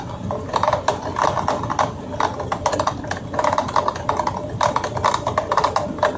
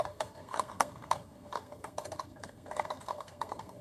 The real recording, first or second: first